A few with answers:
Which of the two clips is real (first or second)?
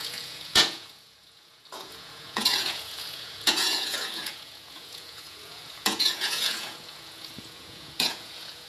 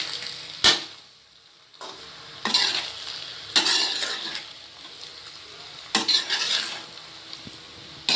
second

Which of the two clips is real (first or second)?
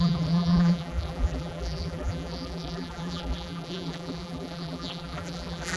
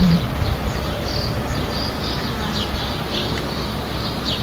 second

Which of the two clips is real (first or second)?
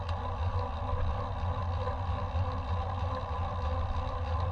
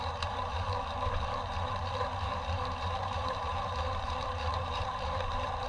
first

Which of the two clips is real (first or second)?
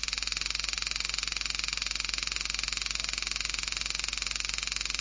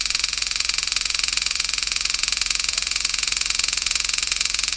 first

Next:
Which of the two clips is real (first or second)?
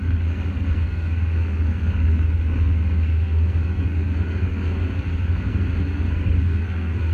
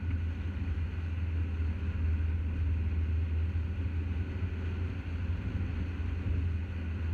second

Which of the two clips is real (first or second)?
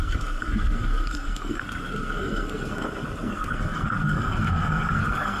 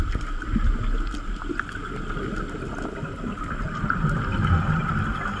second